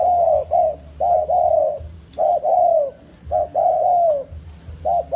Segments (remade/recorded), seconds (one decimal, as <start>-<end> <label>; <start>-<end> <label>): 0.0-5.2 recorded